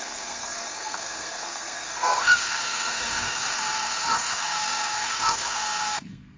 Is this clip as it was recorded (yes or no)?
no